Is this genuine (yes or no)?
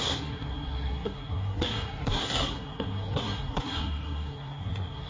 no